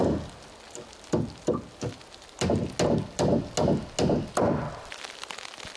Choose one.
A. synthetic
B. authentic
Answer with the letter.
B